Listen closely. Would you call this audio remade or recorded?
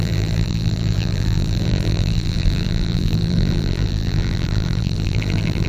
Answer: remade